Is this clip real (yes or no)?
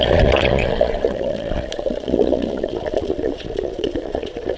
no